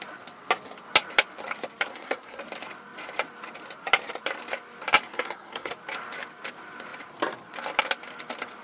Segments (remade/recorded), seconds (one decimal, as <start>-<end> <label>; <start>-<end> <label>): 0.0-1.9 recorded; 1.9-2.4 remade; 2.4-5.1 recorded; 5.1-5.7 remade; 5.7-8.6 recorded